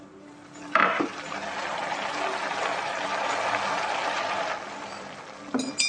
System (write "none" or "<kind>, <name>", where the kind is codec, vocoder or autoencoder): none